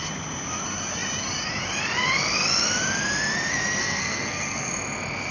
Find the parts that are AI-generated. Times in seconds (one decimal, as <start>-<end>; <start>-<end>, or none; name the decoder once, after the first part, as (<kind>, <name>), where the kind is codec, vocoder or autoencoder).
3.8-4.7 (codec, SNAC)